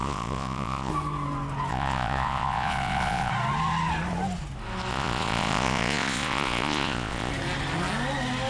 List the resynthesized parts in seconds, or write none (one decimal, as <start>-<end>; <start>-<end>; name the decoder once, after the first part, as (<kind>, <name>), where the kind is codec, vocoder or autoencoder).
0.0-0.9 (vocoder, Vocos); 1.7-3.3; 4.9-7.3